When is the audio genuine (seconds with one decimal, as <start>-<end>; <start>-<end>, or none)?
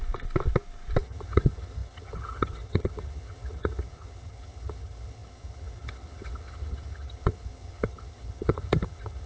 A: 0.0-1.0